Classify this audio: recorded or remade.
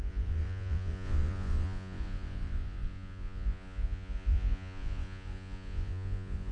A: remade